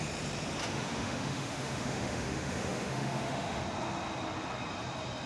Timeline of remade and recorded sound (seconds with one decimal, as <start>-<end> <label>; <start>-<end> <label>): 0.0-0.6 recorded; 0.6-3.6 remade; 3.6-5.3 recorded